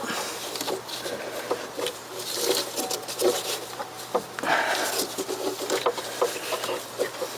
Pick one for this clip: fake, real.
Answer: real